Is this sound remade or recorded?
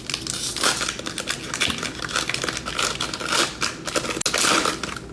recorded